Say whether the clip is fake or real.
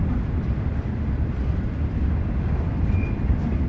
real